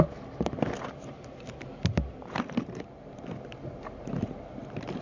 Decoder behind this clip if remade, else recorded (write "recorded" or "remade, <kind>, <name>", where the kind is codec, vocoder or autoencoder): remade, vocoder, BigVGAN v2